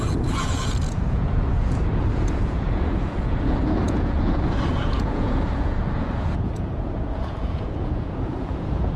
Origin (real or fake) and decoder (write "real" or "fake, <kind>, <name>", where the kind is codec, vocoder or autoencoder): fake, vocoder, Vocos